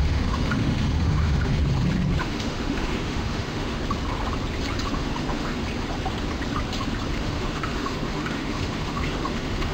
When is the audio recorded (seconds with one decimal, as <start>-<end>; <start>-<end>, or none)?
1.6-2.2; 3.8-4.9; 5.6-7.1